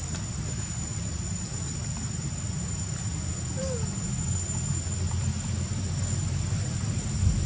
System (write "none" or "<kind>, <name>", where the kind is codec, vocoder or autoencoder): none